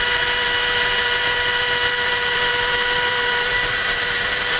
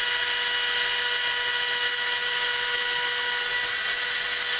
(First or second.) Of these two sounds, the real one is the second